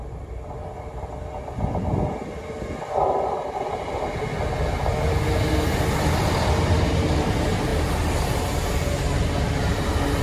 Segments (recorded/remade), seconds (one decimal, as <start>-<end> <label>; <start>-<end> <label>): 0.0-10.2 recorded

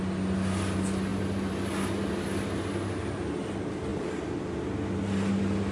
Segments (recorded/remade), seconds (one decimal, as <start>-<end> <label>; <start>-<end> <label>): 0.0-5.7 recorded

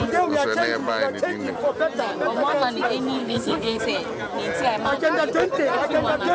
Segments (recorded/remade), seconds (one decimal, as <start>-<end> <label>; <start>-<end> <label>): 0.0-3.2 recorded; 3.2-3.8 remade; 3.8-6.3 recorded

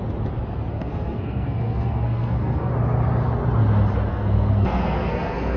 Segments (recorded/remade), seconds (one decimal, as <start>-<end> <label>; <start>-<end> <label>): 0.0-0.7 recorded; 0.7-2.7 remade; 2.7-4.1 recorded; 4.1-5.6 remade

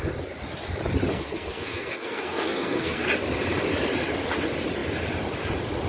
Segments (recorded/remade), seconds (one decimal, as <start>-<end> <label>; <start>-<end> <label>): 0.0-1.1 recorded; 1.1-3.1 remade; 3.1-5.9 recorded

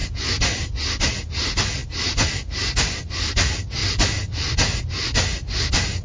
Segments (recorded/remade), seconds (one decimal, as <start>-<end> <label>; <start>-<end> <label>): 0.0-6.0 recorded

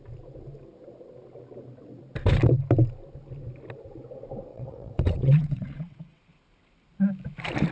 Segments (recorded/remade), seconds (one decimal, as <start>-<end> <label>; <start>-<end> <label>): 0.0-4.5 recorded; 4.5-6.2 remade; 6.2-7.7 recorded